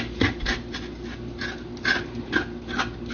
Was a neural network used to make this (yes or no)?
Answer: no